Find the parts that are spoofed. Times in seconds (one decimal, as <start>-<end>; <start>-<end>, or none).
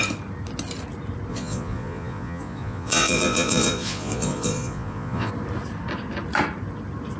1.3-5.3